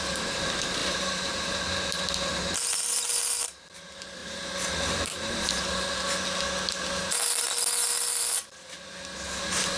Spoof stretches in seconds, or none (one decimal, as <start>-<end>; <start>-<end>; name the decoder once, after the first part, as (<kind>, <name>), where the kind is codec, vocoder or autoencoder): 0.8-1.6 (vocoder, BigVGAN v2); 4.2-5.5